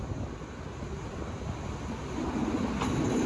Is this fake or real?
real